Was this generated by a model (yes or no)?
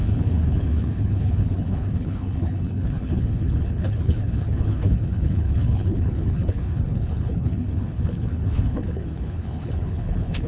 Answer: yes